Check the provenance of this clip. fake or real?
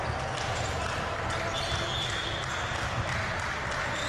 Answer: real